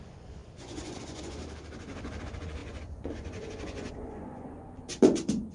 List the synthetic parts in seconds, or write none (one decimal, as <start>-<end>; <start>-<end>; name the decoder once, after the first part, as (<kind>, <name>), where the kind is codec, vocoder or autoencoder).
0.0-1.4 (vocoder, Vocos); 2.2-5.5